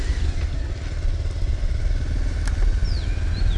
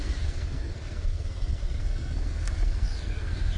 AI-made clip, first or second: second